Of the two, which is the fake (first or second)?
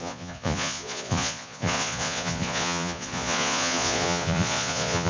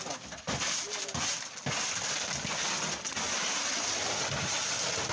first